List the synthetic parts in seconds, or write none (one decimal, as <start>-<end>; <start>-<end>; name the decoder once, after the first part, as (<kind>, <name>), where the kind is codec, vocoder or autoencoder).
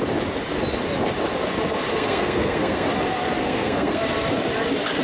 1.9-2.9 (codec, SNAC); 3.4-4.0